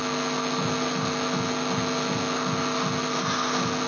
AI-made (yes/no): no